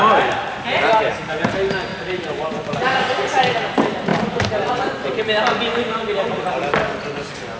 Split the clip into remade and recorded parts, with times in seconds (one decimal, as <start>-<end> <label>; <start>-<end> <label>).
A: 0.0-1.9 recorded; 1.9-2.5 remade; 2.5-4.1 recorded; 4.1-4.9 remade; 4.9-5.7 recorded; 5.7-6.5 remade; 6.5-7.6 recorded